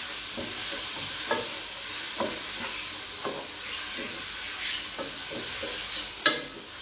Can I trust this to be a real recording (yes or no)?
yes